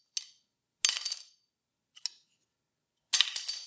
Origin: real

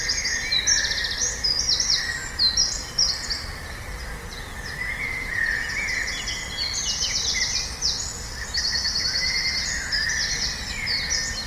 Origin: real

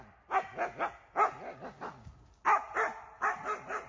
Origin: real